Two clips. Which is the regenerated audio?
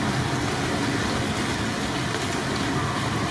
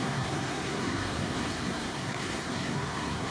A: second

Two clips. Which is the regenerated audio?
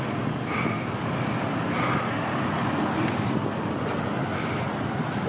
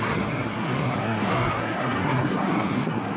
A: second